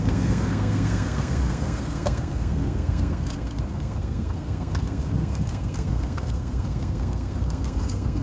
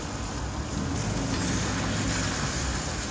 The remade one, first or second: first